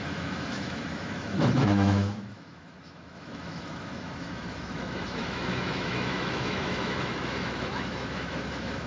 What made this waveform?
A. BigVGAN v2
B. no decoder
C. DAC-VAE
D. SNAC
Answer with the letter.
C